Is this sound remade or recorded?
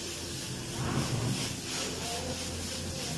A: recorded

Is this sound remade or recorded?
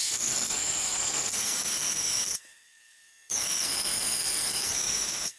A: remade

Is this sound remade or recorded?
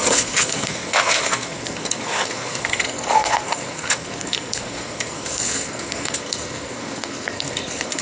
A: remade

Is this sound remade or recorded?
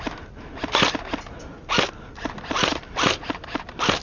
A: recorded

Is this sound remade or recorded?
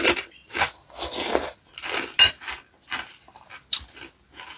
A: recorded